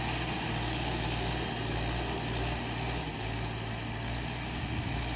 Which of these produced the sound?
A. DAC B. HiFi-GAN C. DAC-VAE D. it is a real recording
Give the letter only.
D